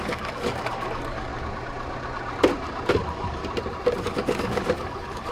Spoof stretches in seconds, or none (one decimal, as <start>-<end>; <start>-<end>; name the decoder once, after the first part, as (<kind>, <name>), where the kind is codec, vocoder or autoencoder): 0.0-1.3 (codec, DAC); 2.9-3.4; 4.0-5.3

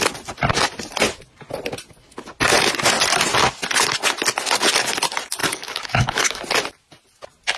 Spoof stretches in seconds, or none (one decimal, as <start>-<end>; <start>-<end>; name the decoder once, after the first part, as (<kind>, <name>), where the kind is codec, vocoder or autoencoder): 5.4-6.4 (codec, DAC)

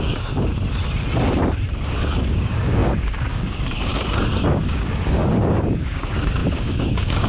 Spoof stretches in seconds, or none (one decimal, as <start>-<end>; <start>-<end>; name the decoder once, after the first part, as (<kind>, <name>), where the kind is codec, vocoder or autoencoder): 0.0-0.5 (codec, DAC); 1.9-3.9; 4.5-7.3

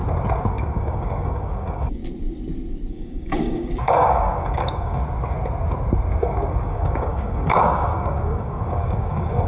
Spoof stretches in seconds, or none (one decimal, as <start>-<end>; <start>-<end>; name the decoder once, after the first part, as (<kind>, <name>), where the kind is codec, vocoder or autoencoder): 0.5-2.0 (codec, DAC); 2.9-5.0; 6.2-9.5

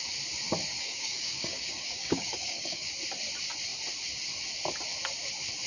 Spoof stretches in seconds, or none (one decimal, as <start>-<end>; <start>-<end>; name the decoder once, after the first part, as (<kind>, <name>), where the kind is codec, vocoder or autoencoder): 0.7-2.9 (codec, DAC)

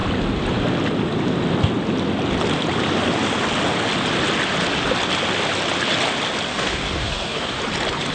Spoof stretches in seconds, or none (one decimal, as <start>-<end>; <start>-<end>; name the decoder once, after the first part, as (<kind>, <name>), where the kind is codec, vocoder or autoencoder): 6.5-7.6 (codec, DAC)

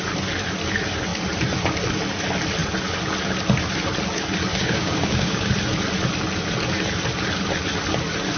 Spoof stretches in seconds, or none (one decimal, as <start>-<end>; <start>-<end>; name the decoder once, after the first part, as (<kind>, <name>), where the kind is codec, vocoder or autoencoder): 4.5-5.5 (codec, DAC)

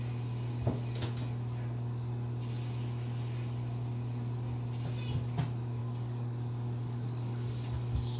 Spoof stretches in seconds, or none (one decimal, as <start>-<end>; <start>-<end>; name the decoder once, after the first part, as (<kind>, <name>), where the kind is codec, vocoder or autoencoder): 5.8-8.2 (codec, DAC)